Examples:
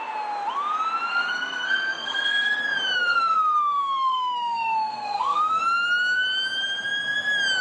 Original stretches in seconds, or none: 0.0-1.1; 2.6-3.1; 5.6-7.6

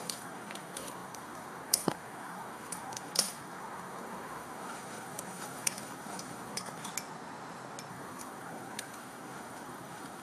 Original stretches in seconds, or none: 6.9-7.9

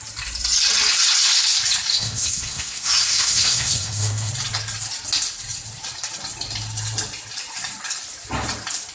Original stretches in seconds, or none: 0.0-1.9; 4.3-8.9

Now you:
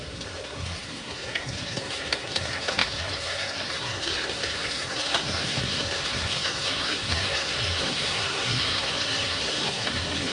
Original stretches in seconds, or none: none

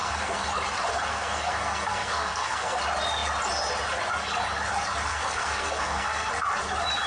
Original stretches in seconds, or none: 0.5-0.9; 2.8-5.1; 6.3-7.1